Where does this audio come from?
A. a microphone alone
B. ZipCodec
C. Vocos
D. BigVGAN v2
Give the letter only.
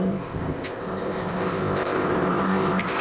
B